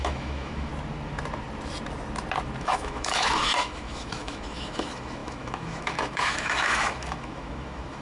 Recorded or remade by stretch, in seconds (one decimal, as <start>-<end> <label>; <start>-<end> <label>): 0.0-0.7 remade; 0.7-2.6 recorded; 2.6-8.0 remade